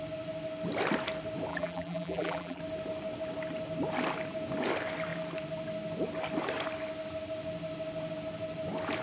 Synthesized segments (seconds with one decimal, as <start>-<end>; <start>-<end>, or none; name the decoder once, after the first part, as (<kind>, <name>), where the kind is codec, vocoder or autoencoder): 1.5-2.6 (vocoder, BigVGAN v2)